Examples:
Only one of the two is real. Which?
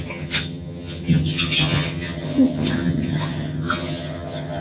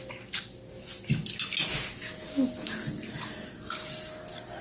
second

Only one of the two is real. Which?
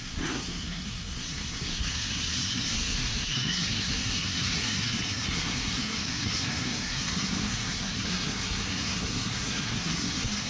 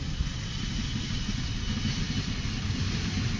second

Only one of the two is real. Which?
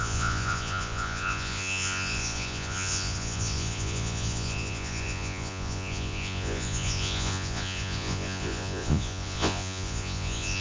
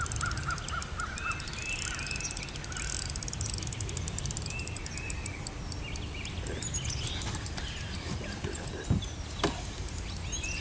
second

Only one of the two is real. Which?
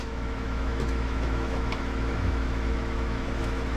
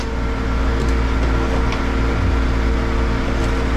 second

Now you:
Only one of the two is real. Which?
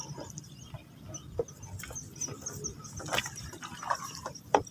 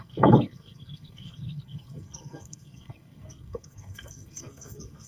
first